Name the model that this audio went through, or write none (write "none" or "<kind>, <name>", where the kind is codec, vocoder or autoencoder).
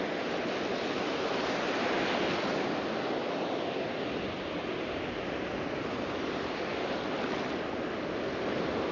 none